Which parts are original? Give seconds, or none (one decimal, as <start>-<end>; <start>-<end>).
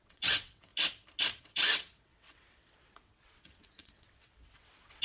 0.7-1.4